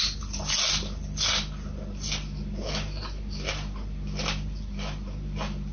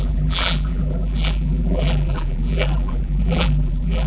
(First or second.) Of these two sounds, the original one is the first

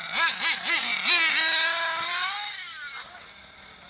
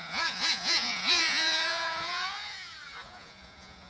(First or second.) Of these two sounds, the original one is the first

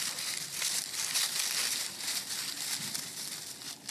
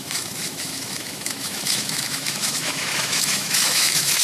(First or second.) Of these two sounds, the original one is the first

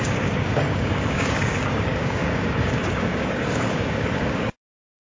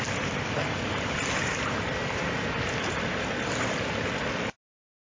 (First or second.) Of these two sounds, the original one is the second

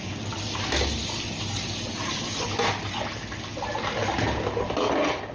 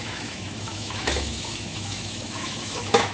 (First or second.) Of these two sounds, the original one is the first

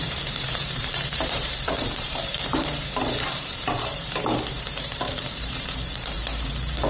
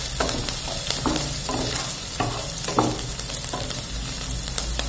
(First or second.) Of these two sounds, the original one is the second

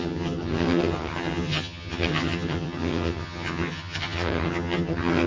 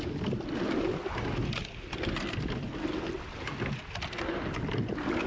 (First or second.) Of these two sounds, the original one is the second